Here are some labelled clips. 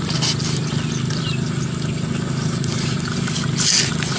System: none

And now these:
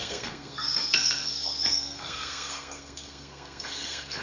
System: codec, SNAC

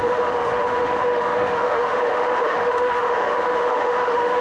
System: autoencoder, DAC-VAE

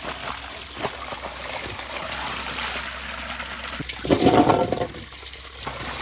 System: none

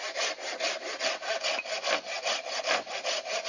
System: none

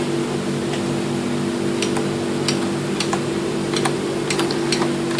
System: none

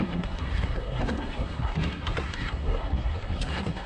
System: codec, SNAC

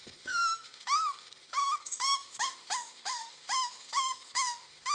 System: autoencoder, DAC-VAE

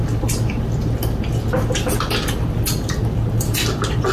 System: none